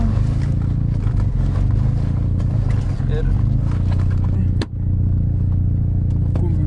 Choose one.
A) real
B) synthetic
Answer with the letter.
A